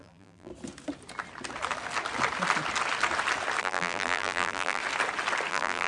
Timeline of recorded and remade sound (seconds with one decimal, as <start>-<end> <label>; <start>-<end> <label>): 0.0-0.5 remade; 0.5-3.6 recorded; 3.6-4.8 remade; 4.8-5.5 recorded; 5.5-5.9 remade